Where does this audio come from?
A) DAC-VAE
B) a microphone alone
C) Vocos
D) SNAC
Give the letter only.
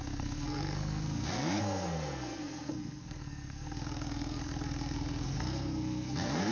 D